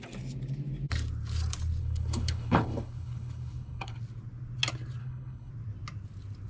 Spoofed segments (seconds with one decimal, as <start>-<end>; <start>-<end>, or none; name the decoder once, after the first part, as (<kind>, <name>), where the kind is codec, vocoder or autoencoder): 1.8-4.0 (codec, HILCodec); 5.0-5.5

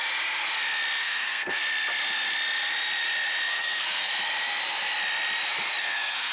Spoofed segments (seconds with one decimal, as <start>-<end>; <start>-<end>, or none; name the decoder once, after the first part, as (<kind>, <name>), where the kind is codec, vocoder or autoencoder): 1.0-1.6 (codec, SNAC); 3.5-4.1; 5.8-6.3

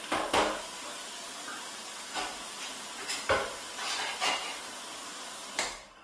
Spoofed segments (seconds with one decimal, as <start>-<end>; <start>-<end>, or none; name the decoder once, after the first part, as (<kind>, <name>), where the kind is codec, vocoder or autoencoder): none